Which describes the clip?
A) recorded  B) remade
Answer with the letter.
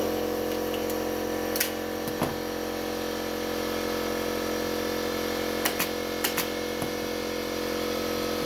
A